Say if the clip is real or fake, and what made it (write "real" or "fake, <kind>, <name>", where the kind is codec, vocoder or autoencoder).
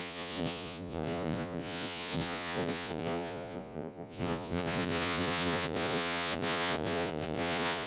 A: fake, vocoder, Vocos